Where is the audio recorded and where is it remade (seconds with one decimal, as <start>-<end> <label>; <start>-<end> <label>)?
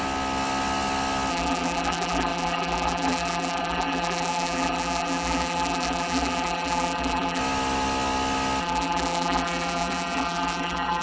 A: 0.0-1.3 recorded; 1.3-7.4 remade; 7.4-8.6 recorded; 8.6-11.0 remade